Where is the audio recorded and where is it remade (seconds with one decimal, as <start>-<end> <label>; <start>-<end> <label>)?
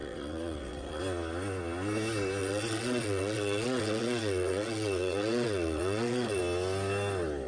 0.0-1.0 remade; 1.0-2.4 recorded; 2.4-6.4 remade; 6.4-7.5 recorded